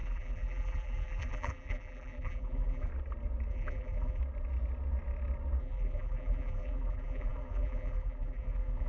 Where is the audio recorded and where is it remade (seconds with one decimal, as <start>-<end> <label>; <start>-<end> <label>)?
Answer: 0.0-2.9 remade; 2.9-3.5 recorded; 3.5-4.2 remade; 4.2-5.6 recorded; 5.6-8.9 remade